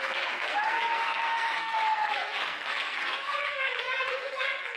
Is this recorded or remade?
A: remade